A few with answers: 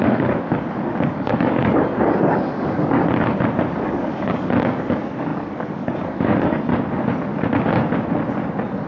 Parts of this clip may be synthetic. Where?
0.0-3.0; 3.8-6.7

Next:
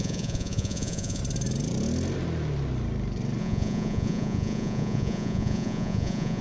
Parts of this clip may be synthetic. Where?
0.0-1.2; 3.4-6.4